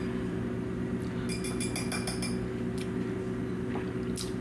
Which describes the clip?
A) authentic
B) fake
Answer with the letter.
A